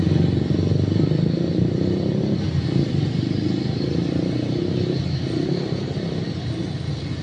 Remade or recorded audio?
recorded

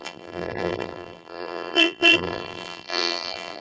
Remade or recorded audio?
remade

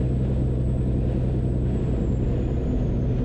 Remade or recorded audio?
recorded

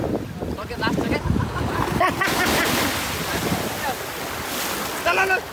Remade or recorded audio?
recorded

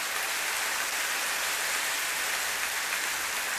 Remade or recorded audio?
recorded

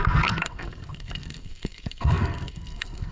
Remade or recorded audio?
remade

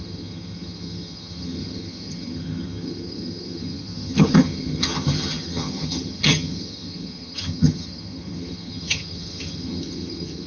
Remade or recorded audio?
remade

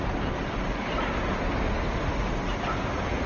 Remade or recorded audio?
recorded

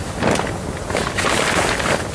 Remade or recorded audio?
recorded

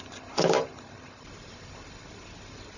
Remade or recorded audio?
recorded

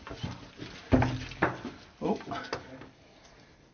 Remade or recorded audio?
recorded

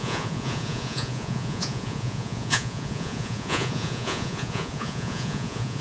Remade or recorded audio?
remade